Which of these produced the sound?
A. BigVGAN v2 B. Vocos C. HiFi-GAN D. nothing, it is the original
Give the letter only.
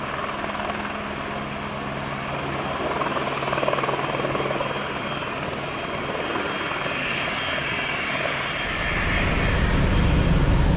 D